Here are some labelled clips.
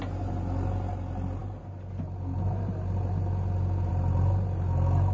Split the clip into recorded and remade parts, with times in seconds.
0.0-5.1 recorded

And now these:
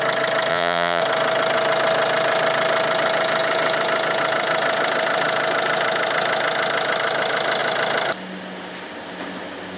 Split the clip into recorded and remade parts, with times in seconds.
0.0-0.5 recorded; 0.5-1.0 remade; 1.0-9.8 recorded